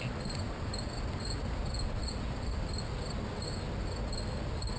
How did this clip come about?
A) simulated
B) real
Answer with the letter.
B